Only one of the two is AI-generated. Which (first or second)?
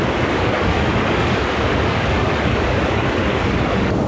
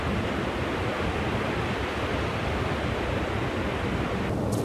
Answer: first